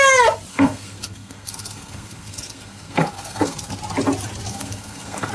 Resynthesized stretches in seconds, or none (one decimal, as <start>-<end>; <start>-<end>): 0.5-3.7; 4.5-5.3